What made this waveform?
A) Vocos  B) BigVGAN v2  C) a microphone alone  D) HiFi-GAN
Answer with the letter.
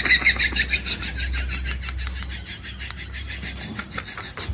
C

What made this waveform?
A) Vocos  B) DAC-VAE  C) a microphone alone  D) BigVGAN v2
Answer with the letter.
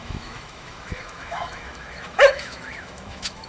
B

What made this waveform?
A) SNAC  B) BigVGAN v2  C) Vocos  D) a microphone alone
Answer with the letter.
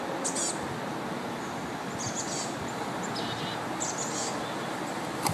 D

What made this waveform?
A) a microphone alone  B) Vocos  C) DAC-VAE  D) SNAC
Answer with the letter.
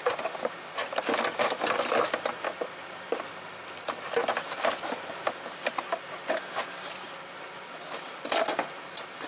A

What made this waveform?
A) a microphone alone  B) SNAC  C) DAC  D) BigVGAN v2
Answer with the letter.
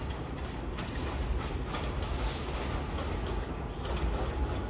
A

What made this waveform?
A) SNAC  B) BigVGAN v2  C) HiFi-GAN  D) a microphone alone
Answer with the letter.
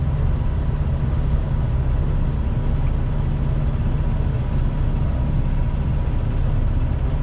D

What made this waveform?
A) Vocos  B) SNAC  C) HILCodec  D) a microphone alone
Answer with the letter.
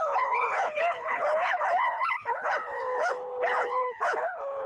C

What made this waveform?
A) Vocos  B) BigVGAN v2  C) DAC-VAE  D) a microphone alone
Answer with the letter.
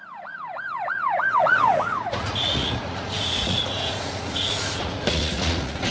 A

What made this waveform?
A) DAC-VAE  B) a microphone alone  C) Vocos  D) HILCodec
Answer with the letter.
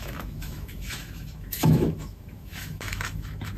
A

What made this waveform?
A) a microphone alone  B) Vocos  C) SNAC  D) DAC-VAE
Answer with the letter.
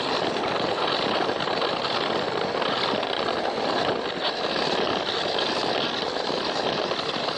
A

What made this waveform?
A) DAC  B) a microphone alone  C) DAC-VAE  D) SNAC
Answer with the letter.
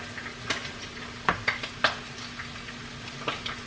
B